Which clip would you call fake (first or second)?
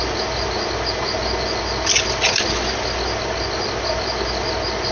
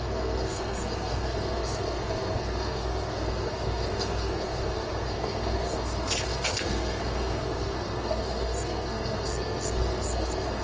second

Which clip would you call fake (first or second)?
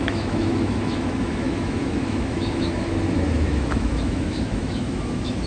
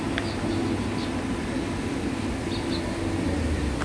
first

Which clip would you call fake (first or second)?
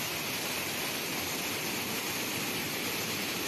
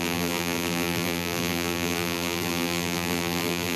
second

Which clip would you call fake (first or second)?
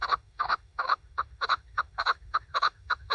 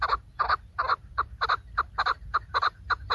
first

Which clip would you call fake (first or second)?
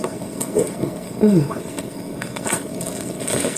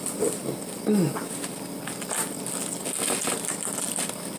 first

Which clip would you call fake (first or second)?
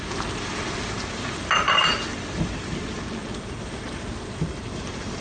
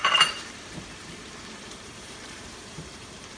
second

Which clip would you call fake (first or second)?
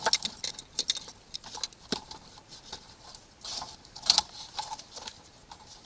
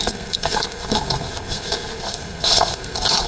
second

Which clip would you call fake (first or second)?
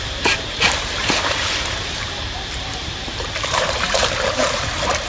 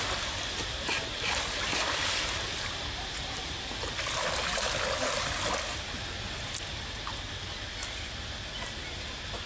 first